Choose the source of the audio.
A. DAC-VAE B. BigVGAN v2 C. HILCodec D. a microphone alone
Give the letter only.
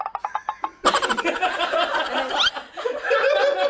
D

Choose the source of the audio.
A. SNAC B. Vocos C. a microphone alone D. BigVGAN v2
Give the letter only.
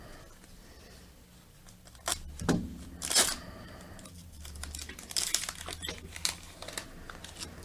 C